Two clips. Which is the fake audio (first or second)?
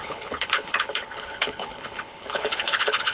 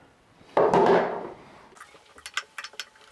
first